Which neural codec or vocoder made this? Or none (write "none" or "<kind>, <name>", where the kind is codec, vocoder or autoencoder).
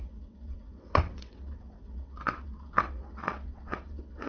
vocoder, WaveNeXt